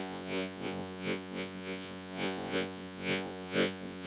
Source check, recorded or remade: remade